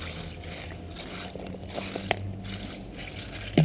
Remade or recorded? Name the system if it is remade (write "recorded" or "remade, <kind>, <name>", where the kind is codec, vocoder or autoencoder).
recorded